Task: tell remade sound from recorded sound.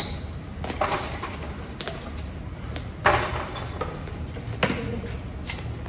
recorded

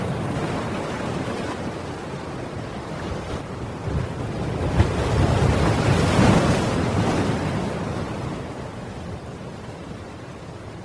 recorded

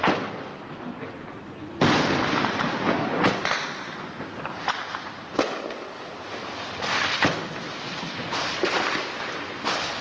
recorded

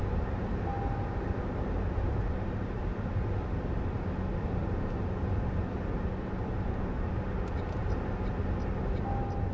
recorded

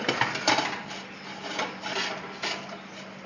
recorded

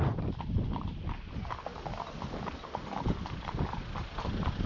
recorded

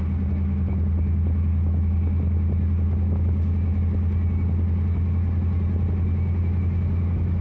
recorded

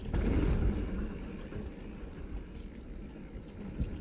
recorded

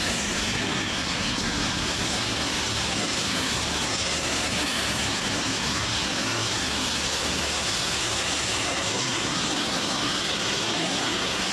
remade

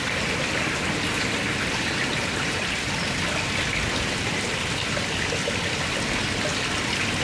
recorded